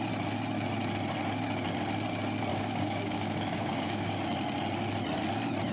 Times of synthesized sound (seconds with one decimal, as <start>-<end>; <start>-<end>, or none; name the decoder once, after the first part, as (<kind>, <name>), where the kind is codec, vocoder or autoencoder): 2.5-4.2 (codec, DAC)